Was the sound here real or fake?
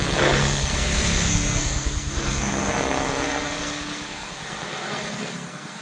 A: fake